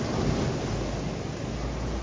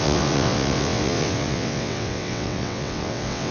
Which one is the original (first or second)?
first